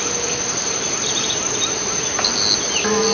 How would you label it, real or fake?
real